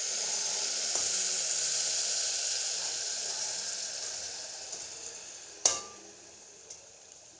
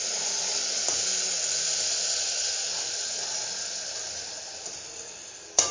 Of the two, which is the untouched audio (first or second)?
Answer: second